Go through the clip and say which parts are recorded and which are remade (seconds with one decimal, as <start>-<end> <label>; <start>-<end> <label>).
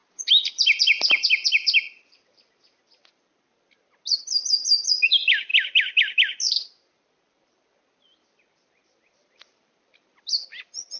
0.0-4.9 recorded; 4.9-5.5 remade; 5.5-10.2 recorded; 10.2-11.0 remade